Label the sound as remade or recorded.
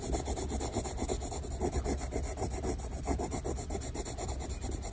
recorded